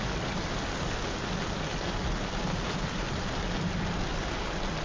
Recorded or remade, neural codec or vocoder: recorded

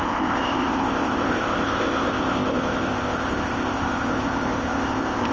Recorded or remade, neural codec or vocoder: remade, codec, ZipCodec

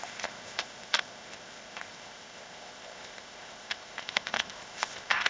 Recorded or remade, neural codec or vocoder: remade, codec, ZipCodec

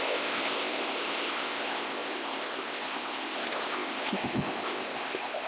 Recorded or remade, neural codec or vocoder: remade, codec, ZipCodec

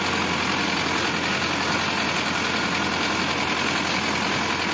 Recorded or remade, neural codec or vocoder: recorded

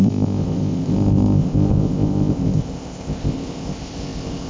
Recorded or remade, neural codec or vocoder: remade, codec, ZipCodec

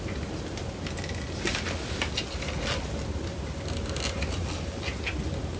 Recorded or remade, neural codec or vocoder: recorded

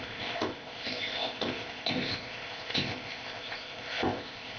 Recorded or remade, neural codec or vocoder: remade, codec, ZipCodec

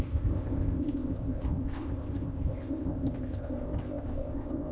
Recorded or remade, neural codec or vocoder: remade, codec, ZipCodec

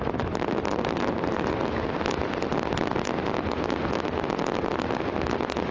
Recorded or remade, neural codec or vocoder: recorded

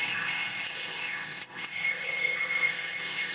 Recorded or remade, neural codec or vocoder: remade, codec, ZipCodec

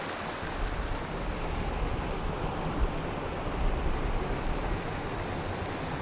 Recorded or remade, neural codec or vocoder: recorded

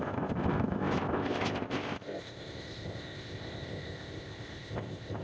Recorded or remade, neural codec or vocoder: remade, codec, ZipCodec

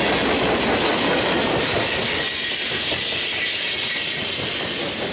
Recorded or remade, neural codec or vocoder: recorded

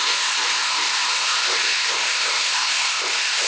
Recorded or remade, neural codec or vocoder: remade, codec, ZipCodec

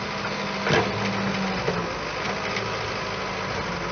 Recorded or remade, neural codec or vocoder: recorded